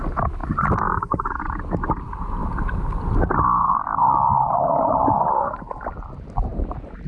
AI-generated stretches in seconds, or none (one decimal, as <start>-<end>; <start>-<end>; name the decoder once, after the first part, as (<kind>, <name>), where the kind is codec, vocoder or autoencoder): 0.4-1.4 (vocoder, BigVGAN v2); 2.4-5.4